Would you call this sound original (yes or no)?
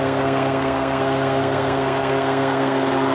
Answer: no